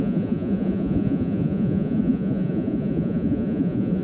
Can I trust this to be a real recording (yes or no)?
no